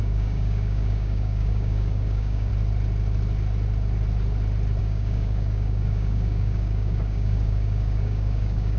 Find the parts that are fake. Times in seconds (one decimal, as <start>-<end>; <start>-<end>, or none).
0.0-2.5; 4.8-8.8